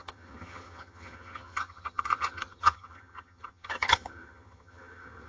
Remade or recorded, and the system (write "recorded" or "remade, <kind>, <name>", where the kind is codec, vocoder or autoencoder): remade, vocoder, HiFi-GAN